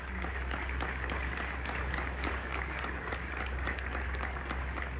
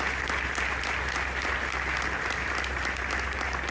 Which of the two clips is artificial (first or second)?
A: first